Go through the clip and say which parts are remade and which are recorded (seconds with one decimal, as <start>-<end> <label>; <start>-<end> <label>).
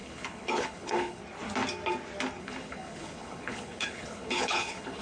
0.0-1.2 remade; 1.2-2.4 recorded; 2.4-5.0 remade